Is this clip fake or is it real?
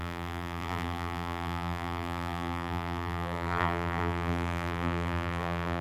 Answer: fake